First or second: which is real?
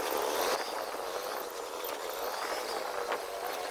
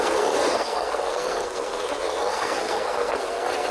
first